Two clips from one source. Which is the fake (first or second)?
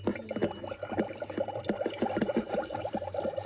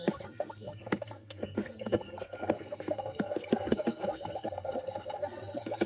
second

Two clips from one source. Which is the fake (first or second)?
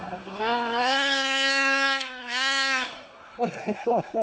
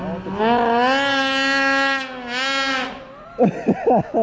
first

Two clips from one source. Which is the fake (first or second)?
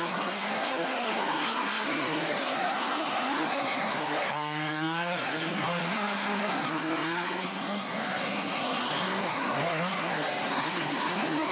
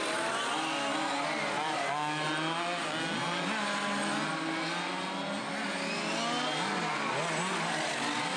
first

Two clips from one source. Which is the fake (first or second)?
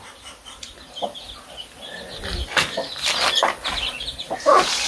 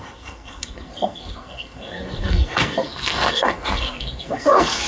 second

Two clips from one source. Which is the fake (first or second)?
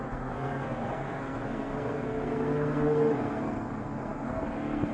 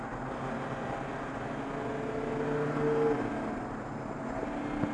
first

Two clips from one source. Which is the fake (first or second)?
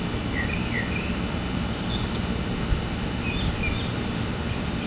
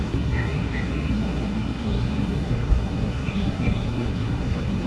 second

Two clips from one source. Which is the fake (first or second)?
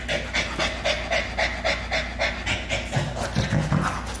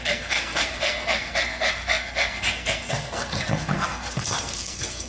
second